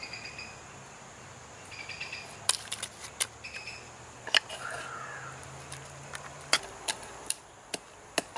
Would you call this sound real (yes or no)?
yes